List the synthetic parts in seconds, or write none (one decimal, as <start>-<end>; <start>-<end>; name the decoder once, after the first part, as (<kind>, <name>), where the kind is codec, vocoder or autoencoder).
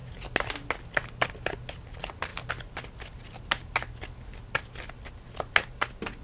none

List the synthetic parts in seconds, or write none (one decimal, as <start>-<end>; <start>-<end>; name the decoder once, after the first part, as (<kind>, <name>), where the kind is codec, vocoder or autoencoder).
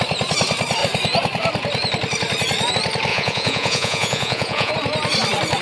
3.1-4.7 (vocoder, Vocos)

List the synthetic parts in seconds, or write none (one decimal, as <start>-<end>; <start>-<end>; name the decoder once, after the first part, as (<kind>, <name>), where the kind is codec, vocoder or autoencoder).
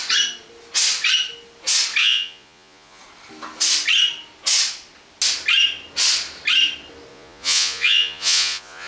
2.0-3.0 (vocoder, Vocos); 7.1-8.9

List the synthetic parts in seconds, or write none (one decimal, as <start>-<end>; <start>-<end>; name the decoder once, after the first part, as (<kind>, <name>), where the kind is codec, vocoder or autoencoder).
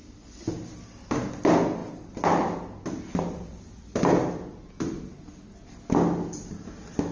none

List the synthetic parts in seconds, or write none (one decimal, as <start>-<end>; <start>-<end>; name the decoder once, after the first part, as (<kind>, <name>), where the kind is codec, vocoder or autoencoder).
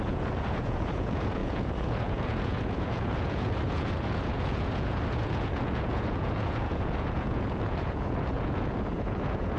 0.0-9.6 (vocoder, Vocos)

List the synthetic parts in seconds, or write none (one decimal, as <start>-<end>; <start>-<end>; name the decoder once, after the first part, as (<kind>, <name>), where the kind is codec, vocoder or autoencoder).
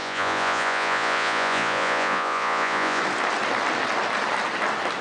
0.0-3.0 (vocoder, Vocos)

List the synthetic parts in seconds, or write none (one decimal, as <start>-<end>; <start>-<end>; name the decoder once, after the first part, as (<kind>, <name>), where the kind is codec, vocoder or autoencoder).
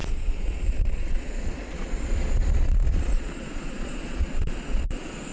0.0-5.3 (vocoder, Vocos)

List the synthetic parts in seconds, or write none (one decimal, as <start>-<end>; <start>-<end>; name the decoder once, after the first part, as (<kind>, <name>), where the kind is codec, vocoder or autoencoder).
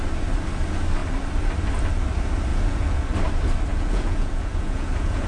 2.5-3.0 (vocoder, Vocos); 3.7-5.3